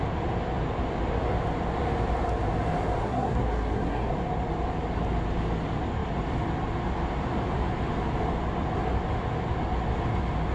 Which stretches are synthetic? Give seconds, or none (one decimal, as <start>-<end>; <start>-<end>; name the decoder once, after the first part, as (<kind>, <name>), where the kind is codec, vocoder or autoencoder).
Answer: 3.0-4.1 (codec, SNAC)